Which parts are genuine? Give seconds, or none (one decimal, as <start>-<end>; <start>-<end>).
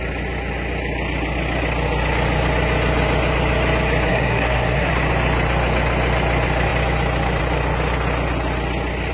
0.0-4.1; 4.9-9.1